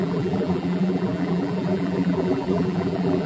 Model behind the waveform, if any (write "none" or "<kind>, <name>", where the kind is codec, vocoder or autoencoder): vocoder, BigVGAN v2